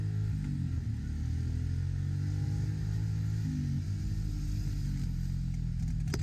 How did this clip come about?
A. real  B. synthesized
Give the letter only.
A